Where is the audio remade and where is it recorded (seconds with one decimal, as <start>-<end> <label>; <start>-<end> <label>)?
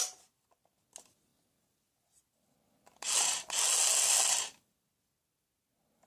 0.0-6.1 recorded